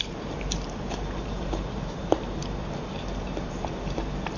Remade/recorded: remade